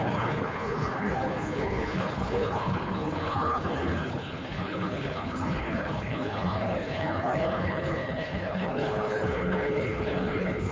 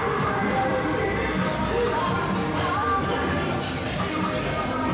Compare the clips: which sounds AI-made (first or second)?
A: first